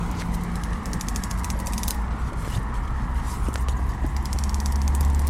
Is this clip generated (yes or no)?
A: no